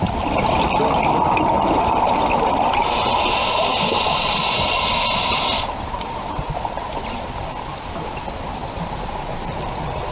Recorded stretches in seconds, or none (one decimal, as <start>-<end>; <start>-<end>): 0.0-3.7; 6.6-10.1